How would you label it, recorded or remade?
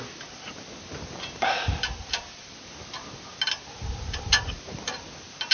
recorded